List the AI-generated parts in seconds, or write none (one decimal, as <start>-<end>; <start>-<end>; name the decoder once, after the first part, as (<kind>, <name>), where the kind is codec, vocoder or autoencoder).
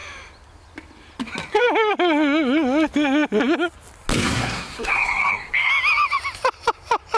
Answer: 4.2-5.7 (codec, SNAC)